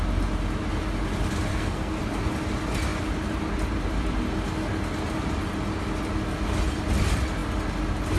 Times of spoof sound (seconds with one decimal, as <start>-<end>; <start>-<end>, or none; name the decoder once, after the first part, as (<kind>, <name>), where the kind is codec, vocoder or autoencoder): 1.5-2.0 (codec, SNAC)